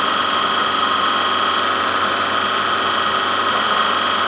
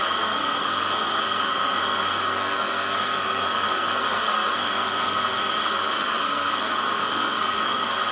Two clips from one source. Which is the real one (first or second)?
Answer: first